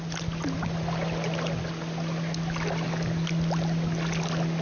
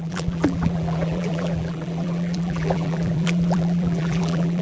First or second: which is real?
first